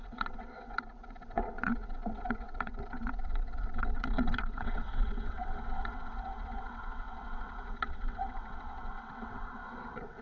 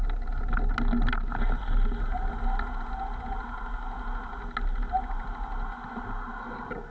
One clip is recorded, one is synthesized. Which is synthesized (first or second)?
first